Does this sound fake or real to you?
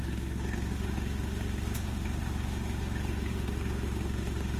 fake